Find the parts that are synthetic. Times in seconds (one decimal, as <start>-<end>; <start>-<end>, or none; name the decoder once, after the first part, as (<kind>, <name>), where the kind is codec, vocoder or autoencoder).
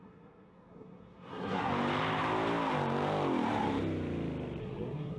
0.0-1.7 (codec, SNAC); 4.6-5.2